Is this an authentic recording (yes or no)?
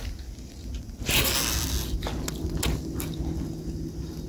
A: yes